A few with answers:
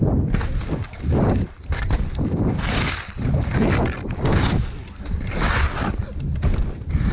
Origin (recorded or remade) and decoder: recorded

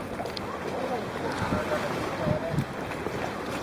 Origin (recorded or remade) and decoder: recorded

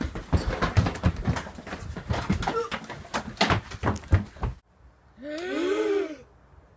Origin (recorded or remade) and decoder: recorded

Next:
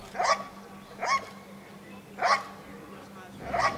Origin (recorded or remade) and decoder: recorded